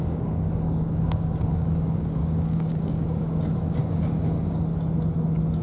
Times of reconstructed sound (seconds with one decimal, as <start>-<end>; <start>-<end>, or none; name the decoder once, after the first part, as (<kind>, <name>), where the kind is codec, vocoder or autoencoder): 0.0-3.4 (codec, DAC); 3.8-4.6